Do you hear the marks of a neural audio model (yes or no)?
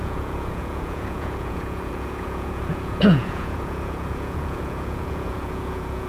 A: yes